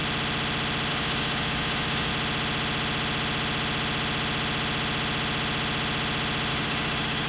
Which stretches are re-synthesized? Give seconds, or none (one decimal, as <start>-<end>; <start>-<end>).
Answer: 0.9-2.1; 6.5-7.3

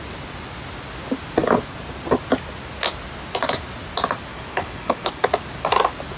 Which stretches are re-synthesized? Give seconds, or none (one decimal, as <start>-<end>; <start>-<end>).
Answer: 4.3-5.3

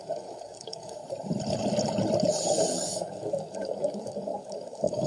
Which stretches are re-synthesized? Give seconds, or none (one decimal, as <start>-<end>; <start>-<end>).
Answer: 0.0-1.0; 2.7-5.1

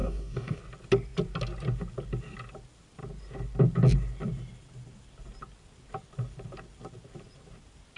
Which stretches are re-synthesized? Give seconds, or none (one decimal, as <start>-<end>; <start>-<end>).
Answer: 0.0-0.6

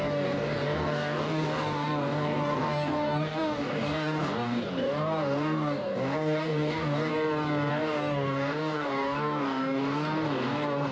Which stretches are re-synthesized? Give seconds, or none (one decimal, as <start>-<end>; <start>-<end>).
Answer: 0.0-7.1; 7.7-10.9

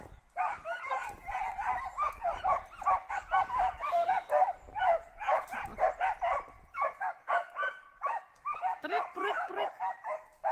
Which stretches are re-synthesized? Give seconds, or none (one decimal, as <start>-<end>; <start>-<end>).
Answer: 0.0-2.3; 3.1-5.7; 6.7-10.5

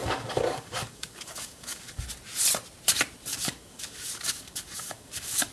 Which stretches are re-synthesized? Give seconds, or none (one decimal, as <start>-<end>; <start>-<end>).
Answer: 0.0-2.0; 3.3-5.5

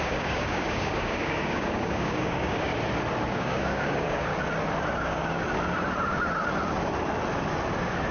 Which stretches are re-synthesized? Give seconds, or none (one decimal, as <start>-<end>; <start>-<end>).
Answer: 0.0-2.7; 3.3-4.3; 5.0-5.4